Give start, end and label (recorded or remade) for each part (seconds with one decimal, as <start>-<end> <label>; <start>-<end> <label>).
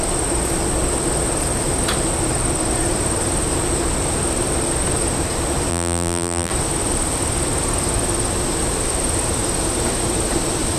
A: 0.0-5.7 recorded; 5.7-6.5 remade; 6.5-10.8 recorded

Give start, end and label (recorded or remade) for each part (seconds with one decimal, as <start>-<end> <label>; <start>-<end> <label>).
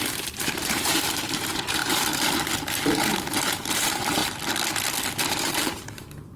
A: 0.0-1.8 remade; 1.8-3.0 recorded; 3.0-4.2 remade; 4.2-5.1 recorded; 5.1-6.4 remade